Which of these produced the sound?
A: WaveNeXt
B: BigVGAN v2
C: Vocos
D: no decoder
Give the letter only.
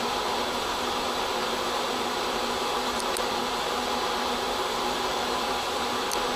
B